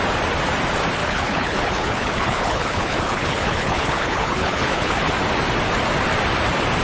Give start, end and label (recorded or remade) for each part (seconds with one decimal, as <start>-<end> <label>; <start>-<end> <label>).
0.0-1.0 recorded; 1.0-5.1 remade; 5.1-6.8 recorded